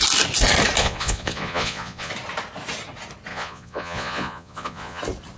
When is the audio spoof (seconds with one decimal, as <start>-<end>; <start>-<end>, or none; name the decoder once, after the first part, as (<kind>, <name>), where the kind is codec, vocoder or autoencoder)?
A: 0.8-2.1 (vocoder, Vocos); 3.3-5.0